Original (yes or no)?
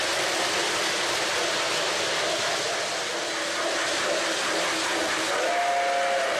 yes